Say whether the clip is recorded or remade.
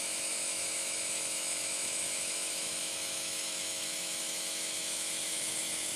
remade